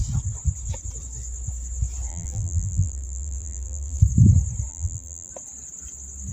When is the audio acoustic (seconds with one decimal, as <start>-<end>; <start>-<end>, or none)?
0.0-2.1; 4.0-4.7; 5.3-6.3